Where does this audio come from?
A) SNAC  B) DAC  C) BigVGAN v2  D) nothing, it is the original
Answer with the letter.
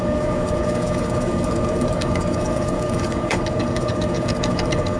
B